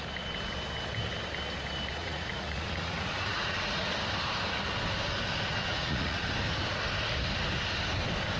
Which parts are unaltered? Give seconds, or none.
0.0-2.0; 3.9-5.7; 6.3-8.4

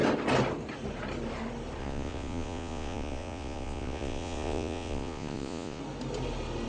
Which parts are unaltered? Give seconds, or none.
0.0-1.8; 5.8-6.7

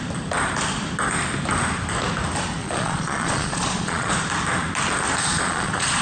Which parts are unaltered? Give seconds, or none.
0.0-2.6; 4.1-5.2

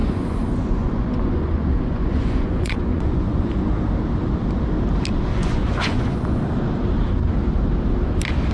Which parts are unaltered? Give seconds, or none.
3.5-5.3; 6.4-8.5

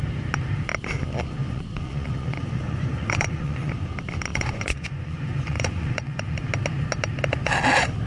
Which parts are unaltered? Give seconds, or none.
0.0-1.4; 3.7-4.3; 6.5-8.1

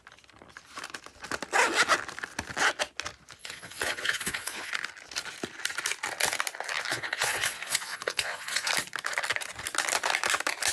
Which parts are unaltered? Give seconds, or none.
0.0-3.4; 4.7-6.9; 8.7-10.7